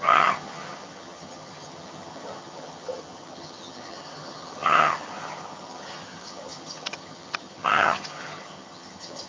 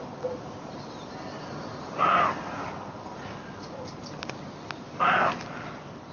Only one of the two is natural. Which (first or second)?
second